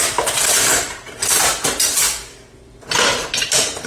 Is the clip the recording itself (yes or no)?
no